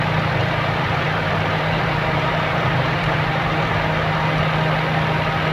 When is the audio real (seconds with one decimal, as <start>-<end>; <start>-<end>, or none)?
0.0-0.4; 3.7-5.5